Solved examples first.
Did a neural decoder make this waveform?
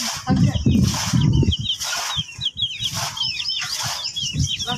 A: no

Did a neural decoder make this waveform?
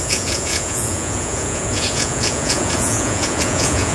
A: yes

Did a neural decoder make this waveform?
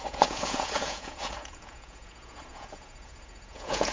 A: yes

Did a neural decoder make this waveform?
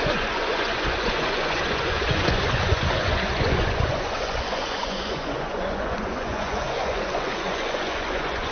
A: yes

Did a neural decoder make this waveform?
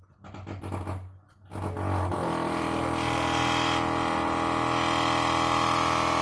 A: no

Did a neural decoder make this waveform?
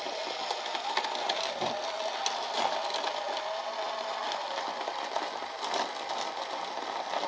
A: no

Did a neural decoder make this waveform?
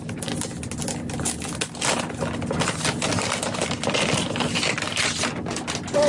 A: no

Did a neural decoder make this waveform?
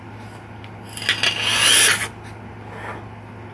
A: no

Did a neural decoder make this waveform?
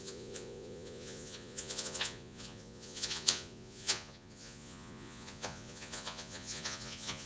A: yes